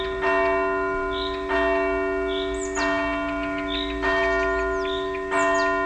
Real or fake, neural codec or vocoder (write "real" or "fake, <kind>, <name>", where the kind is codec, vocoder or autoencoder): real